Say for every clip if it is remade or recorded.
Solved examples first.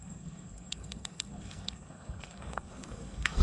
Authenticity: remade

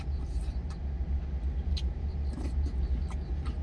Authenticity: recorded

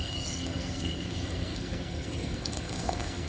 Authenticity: remade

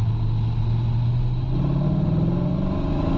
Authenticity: recorded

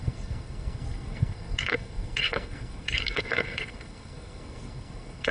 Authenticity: remade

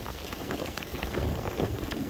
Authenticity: remade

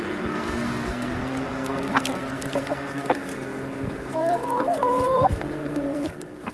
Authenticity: remade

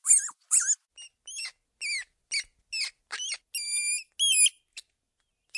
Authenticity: recorded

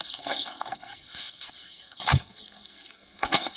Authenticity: remade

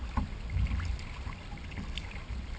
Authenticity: recorded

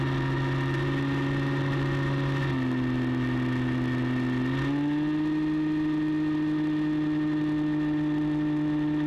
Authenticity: recorded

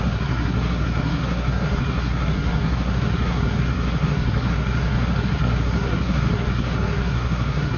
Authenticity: remade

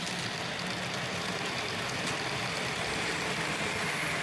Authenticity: recorded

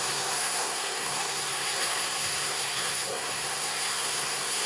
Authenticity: remade